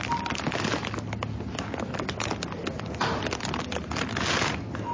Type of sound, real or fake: real